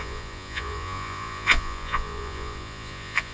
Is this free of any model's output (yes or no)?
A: no